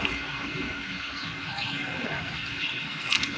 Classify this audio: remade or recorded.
remade